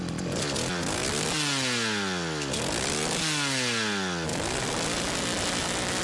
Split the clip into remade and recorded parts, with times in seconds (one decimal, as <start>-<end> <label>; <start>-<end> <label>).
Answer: 0.0-6.0 recorded